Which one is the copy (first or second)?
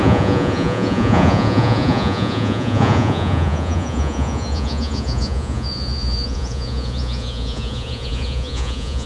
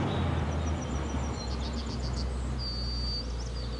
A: first